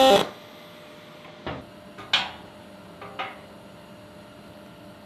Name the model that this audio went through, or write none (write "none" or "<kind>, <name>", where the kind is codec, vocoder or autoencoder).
none